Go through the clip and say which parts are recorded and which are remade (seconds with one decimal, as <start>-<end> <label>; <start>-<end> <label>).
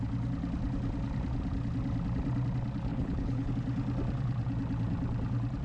0.0-2.9 recorded; 2.9-3.5 remade; 3.5-5.6 recorded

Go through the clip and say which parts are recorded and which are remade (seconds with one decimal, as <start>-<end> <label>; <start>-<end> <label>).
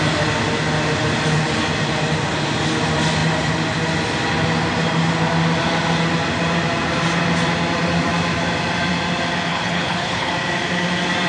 0.0-9.5 recorded; 9.5-10.3 remade; 10.3-11.3 recorded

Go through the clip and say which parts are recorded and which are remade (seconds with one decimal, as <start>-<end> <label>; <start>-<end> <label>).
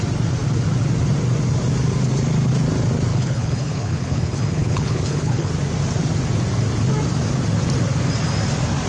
0.0-3.1 recorded; 3.1-5.5 remade; 5.5-8.9 recorded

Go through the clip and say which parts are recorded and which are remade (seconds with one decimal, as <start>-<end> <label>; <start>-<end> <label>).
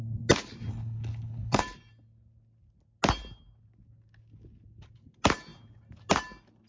0.0-0.7 recorded; 0.7-1.6 remade; 1.6-6.7 recorded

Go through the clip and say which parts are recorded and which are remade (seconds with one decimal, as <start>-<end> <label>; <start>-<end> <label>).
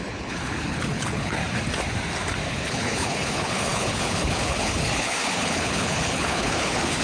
0.0-1.4 remade; 1.4-2.5 recorded; 2.5-7.0 remade